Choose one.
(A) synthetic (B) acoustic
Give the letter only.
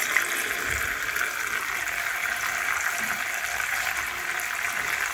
A